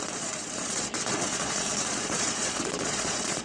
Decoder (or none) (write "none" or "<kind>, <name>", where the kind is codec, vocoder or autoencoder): vocoder, Vocos